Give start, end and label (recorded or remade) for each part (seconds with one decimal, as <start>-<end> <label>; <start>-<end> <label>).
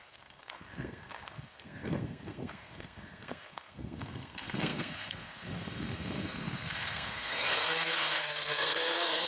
0.0-9.3 remade